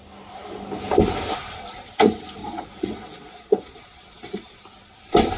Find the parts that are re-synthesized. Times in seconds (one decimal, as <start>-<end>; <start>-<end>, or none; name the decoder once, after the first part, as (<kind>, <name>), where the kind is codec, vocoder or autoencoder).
2.4-4.6 (vocoder, Vocos)